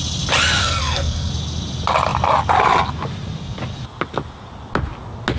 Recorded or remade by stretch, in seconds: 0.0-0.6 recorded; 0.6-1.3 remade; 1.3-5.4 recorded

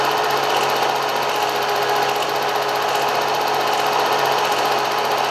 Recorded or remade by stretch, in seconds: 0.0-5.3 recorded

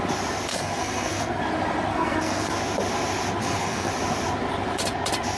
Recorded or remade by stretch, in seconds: 0.0-0.5 recorded; 0.5-1.4 remade; 1.4-1.9 recorded; 1.9-2.5 remade; 2.5-3.4 recorded; 3.4-3.9 remade; 3.9-5.4 recorded

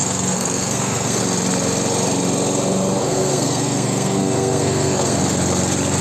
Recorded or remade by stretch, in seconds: 0.0-1.2 remade; 1.2-3.0 recorded; 3.0-5.2 remade; 5.2-6.0 recorded

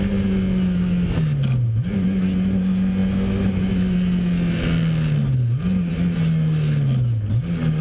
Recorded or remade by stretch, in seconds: 0.0-7.8 recorded